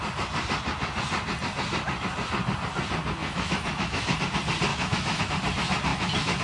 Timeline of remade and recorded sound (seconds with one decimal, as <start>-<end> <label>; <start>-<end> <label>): 0.0-3.2 recorded; 3.2-4.2 remade; 4.2-4.7 recorded; 4.7-5.2 remade; 5.2-5.9 recorded; 5.9-6.4 remade